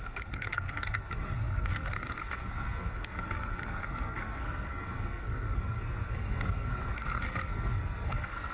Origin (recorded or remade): remade